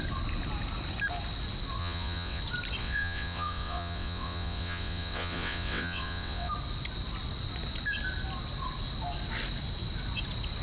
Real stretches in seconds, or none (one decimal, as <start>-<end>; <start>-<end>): 0.0-1.8; 2.4-2.8; 6.5-10.6